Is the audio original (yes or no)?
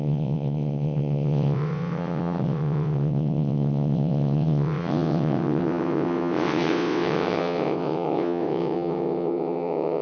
no